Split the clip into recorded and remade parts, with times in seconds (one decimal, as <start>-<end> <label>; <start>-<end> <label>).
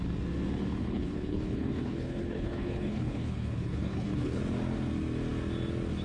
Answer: 0.0-0.8 recorded; 0.8-4.4 remade; 4.4-6.0 recorded